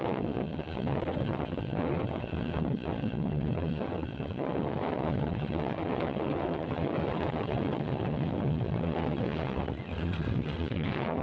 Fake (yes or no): yes